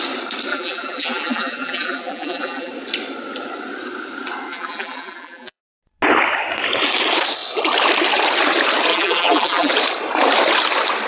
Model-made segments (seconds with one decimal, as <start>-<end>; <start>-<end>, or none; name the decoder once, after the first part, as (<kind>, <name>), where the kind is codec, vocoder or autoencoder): 0.5-2.7 (vocoder, BigVGAN v2); 4.5-5.6; 8.9-9.7